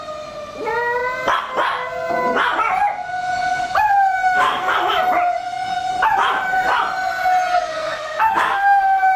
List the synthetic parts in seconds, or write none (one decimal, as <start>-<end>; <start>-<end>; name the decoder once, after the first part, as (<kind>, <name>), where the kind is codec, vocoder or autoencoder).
4.2-4.7 (codec, SNAC); 7.5-9.2